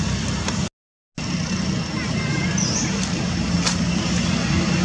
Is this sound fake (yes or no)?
no